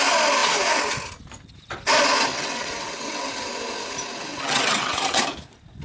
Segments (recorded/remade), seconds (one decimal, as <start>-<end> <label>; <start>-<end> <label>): 0.0-2.3 recorded; 2.3-3.3 remade; 3.3-4.3 recorded; 4.3-5.2 remade; 5.2-5.8 recorded